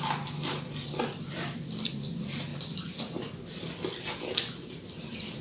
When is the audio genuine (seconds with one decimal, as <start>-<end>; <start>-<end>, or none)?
0.0-5.4

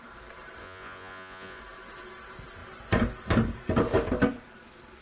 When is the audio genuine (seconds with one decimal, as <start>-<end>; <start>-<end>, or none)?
0.0-0.6; 1.6-5.0

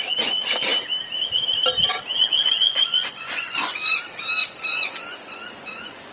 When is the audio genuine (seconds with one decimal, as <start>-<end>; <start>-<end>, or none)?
0.0-2.1; 4.0-4.4

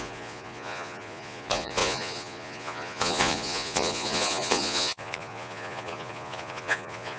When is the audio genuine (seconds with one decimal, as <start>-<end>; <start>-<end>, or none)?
none